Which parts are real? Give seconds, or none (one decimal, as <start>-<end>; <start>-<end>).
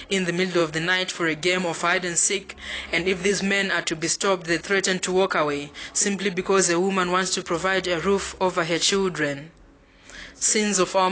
0.0-2.7; 3.3-11.1